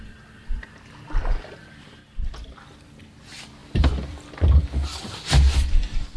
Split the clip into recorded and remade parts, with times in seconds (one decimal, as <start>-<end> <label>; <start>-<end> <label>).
0.0-2.0 recorded; 2.0-2.6 remade; 2.6-3.6 recorded; 3.6-4.3 remade; 4.3-6.2 recorded